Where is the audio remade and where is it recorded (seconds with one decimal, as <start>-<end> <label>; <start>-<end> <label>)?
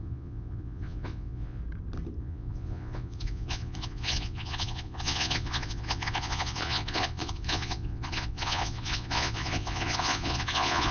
0.0-1.6 remade; 1.6-2.2 recorded; 2.2-10.9 remade